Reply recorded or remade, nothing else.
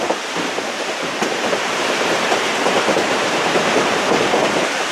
remade